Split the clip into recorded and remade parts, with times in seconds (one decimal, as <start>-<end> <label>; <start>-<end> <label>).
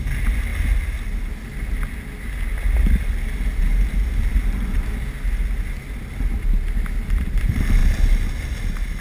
0.0-9.0 recorded